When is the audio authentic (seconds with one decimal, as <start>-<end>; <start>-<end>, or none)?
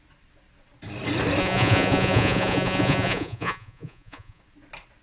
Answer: 0.0-1.4; 4.4-5.0